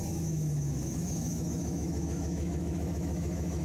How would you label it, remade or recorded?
remade